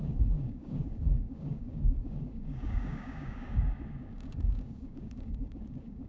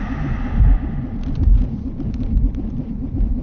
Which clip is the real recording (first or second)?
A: second